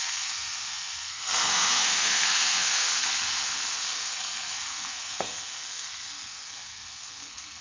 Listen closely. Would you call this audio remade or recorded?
remade